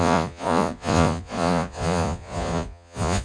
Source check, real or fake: fake